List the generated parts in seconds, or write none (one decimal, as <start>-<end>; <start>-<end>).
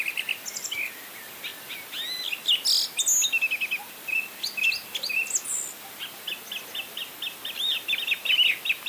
none